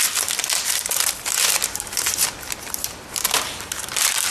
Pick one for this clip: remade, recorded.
remade